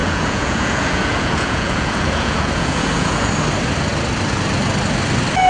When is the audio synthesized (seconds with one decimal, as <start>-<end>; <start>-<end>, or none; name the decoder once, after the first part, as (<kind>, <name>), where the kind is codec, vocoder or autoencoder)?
0.0-3.3 (vocoder, Vocos)